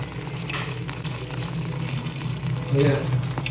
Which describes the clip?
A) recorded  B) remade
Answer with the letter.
A